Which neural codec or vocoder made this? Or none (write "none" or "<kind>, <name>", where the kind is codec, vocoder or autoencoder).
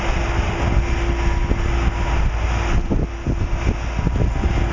none